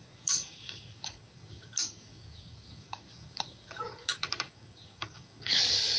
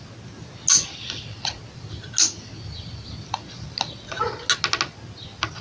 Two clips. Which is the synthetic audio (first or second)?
first